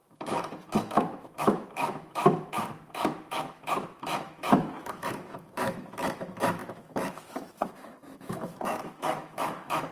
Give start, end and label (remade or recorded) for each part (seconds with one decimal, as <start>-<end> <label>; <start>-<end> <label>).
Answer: 0.0-9.9 remade